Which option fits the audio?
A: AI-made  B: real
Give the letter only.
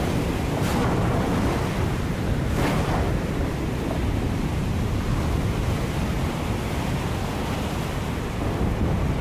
B